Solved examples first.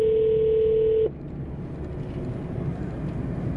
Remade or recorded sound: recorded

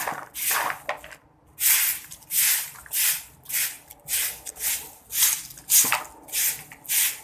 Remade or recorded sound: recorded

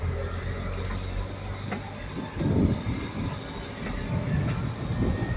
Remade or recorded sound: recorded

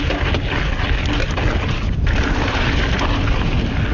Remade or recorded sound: recorded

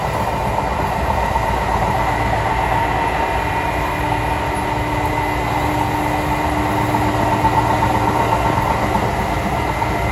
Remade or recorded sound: recorded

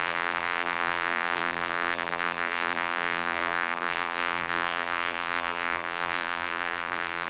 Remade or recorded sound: remade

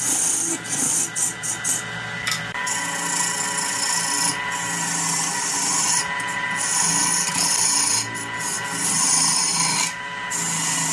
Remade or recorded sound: recorded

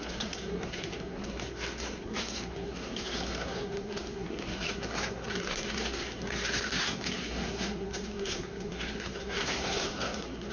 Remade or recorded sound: remade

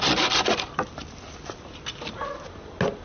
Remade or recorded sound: recorded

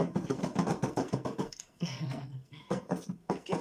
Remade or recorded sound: remade